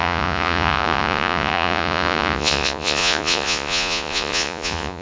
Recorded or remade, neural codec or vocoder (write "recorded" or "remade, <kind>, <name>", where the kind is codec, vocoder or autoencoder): remade, vocoder, Vocos